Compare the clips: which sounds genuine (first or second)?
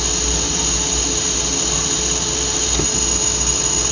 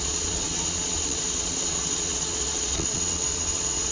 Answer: first